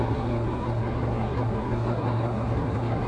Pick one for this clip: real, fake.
fake